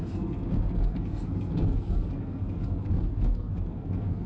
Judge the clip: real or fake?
fake